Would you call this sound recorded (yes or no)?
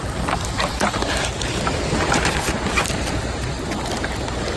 yes